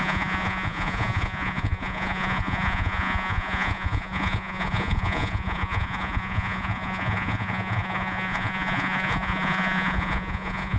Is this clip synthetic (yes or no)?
yes